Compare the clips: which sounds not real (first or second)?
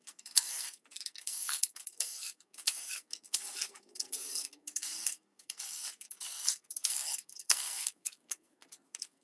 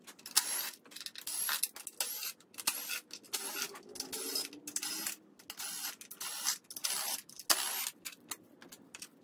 first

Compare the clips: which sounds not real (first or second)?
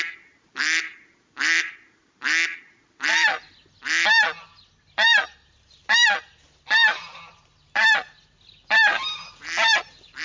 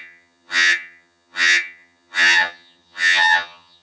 second